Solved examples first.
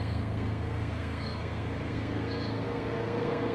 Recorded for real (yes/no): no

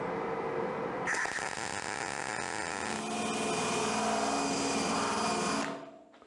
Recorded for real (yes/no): yes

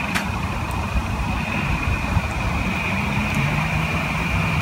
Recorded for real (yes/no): no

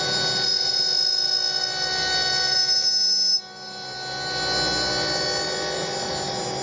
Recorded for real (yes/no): yes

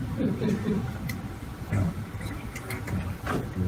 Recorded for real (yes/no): yes